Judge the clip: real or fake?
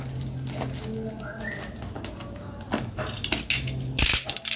real